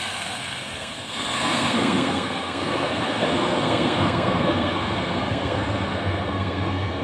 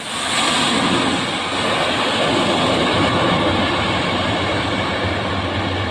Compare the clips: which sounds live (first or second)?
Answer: second